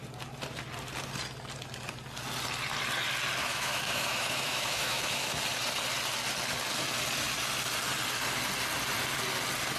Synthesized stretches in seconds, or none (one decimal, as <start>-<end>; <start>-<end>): 3.4-5.4